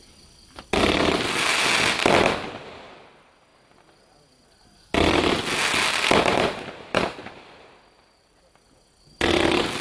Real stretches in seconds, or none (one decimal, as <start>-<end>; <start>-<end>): 0.0-6.3; 8.5-9.8